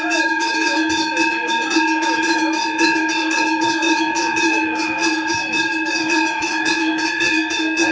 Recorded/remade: remade